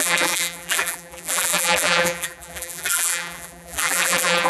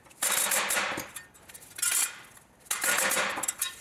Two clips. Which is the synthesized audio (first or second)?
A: first